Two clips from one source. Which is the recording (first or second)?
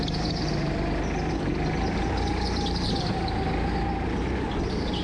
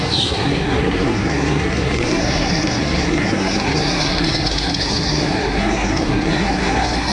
first